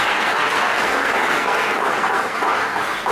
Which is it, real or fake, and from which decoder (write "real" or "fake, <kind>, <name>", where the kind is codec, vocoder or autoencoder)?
fake, codec, SNAC